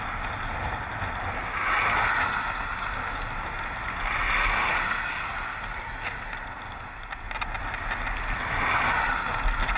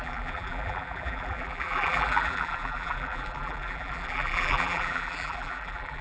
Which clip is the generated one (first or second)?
second